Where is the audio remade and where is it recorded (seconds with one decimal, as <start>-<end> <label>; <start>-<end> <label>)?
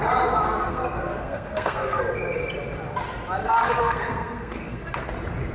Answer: 0.0-0.7 recorded; 0.7-2.0 remade; 2.0-3.4 recorded; 3.4-5.0 remade; 5.0-5.5 recorded